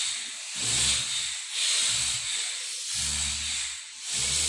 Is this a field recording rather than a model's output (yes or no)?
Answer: yes